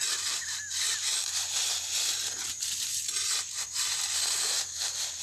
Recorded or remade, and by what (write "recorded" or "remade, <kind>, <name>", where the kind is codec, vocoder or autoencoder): recorded